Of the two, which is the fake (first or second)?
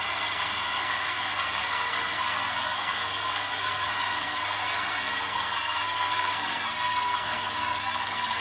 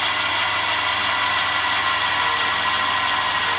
first